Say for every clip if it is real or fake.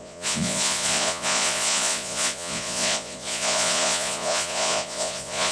fake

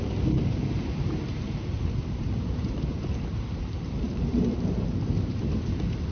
fake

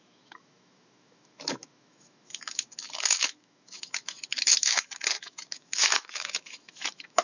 fake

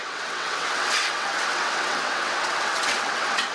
fake